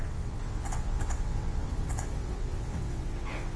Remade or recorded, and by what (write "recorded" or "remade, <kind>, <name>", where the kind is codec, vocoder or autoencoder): remade, vocoder, WaveNeXt